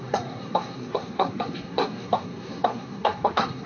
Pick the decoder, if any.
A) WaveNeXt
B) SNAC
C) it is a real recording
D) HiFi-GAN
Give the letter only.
B